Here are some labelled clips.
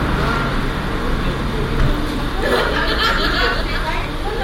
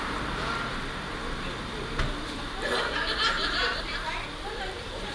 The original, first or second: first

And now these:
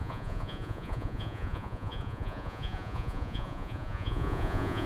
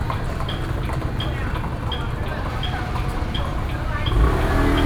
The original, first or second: second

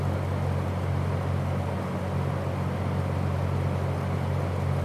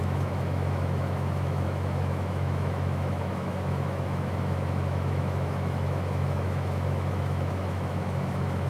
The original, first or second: first